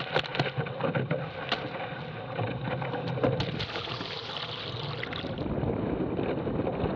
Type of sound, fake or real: real